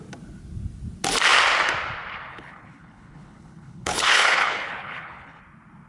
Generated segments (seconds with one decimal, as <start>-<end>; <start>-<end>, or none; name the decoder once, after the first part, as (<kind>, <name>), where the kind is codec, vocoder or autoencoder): 2.3-5.4 (codec, HILCodec)